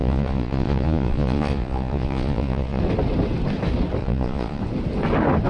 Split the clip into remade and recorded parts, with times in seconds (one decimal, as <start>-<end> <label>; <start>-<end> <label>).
0.0-2.8 remade; 2.8-4.0 recorded; 4.0-4.6 remade; 4.6-5.5 recorded